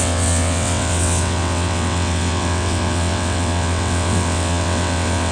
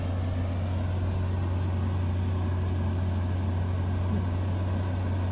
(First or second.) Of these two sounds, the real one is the second